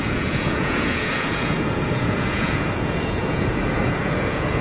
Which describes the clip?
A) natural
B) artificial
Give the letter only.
B